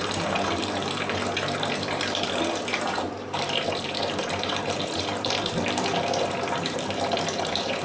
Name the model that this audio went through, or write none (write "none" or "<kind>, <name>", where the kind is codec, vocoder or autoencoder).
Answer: vocoder, BigVGAN v2